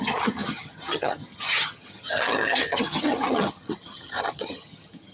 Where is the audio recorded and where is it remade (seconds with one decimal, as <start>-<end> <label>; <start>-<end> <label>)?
0.0-5.1 remade